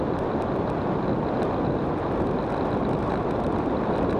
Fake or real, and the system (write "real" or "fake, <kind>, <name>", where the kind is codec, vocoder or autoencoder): real